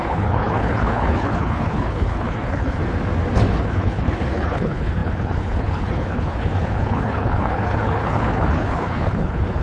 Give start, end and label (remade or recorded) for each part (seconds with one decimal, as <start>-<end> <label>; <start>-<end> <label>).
0.0-2.8 remade; 2.8-3.6 recorded; 3.6-9.6 remade